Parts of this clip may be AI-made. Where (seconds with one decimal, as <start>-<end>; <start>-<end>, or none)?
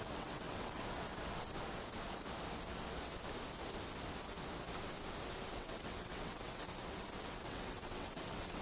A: 0.0-0.8; 5.5-6.7; 7.2-8.6